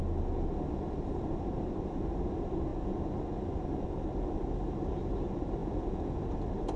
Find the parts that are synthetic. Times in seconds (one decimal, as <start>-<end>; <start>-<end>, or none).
5.6-6.2